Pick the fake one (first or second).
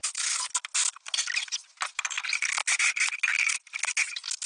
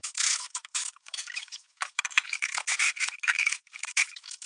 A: second